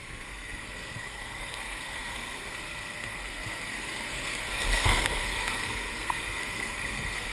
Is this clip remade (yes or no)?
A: yes